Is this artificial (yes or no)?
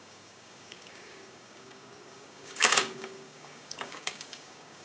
yes